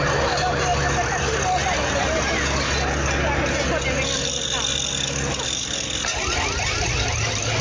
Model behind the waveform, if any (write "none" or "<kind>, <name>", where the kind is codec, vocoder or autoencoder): none